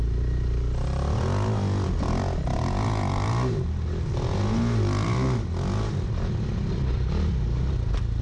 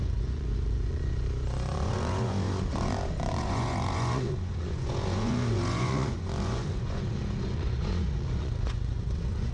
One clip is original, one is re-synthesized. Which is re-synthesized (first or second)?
second